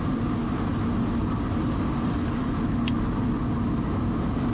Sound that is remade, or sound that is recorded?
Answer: recorded